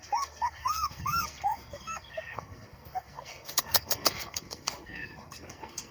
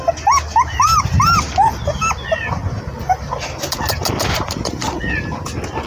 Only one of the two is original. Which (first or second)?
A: second